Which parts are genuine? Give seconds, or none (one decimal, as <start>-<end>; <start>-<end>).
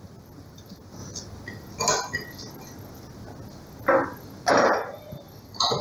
1.0-4.5